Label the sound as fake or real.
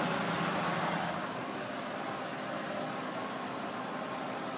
real